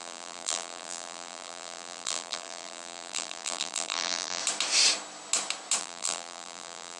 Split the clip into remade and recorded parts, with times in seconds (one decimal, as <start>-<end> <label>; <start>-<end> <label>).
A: 0.0-4.4 remade; 4.4-5.8 recorded; 5.8-7.0 remade